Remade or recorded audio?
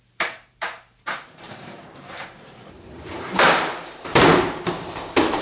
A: remade